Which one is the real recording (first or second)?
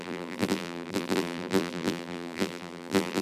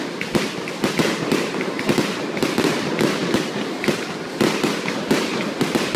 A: second